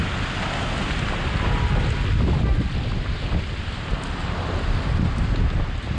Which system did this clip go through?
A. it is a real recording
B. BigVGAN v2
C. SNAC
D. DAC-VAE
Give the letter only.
A